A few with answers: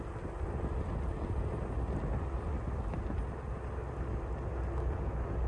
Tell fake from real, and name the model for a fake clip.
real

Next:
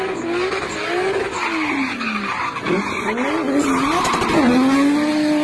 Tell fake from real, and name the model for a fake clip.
real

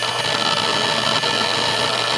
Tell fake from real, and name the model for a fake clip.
real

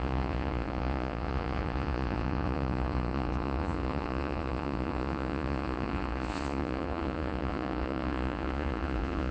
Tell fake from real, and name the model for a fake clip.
fake, vocoder, Vocos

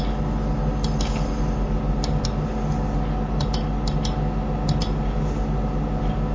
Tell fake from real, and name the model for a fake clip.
real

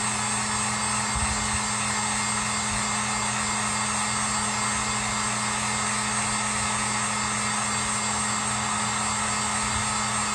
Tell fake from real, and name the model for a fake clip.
real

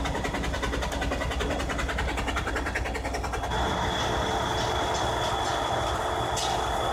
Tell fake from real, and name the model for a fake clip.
real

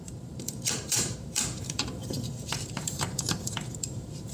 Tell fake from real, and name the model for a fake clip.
fake, vocoder, BigVGAN v2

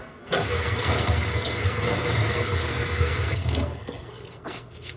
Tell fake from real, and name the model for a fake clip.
fake, codec, SNAC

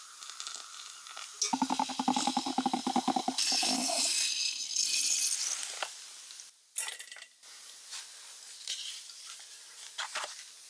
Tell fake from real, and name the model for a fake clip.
real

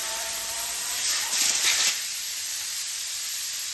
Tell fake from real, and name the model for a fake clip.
fake, vocoder, BigVGAN v2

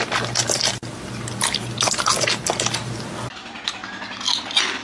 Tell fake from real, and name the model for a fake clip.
real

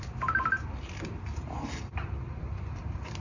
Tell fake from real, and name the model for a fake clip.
real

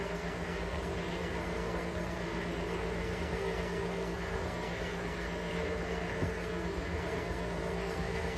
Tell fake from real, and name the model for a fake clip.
fake, codec, SNAC